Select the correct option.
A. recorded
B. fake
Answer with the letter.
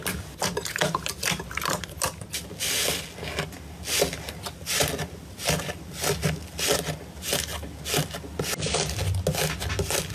A